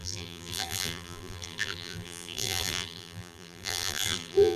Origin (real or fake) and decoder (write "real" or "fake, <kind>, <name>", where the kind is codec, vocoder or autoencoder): fake, vocoder, BigVGAN v2